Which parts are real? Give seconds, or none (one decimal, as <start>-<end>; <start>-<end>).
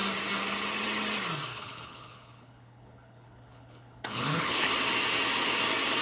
0.0-1.5; 4.7-6.0